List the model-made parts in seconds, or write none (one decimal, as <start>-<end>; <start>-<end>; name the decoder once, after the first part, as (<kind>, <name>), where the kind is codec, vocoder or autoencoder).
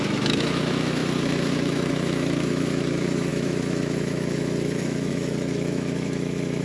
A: 0.0-6.6 (autoencoder, DAC-VAE)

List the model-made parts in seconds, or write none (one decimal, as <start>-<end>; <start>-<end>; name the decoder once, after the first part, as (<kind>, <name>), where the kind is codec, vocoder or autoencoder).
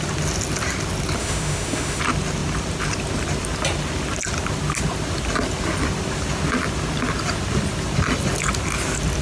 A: 1.2-2.0 (autoencoder, DAC-VAE)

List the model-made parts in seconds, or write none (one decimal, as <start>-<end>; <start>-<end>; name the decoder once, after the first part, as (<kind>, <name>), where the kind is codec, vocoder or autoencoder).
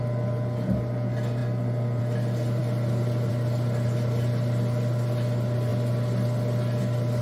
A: none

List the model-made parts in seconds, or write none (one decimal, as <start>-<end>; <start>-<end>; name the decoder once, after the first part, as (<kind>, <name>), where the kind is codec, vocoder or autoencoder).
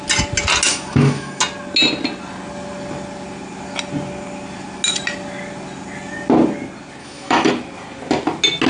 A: 0.7-1.4 (autoencoder, DAC-VAE); 7.0-7.5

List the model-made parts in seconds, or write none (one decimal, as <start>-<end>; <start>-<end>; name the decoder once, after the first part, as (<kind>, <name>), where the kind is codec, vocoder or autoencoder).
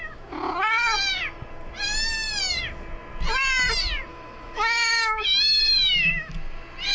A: 4.1-6.3 (autoencoder, DAC-VAE)